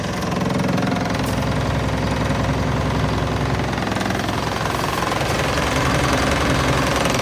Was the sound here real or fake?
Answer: real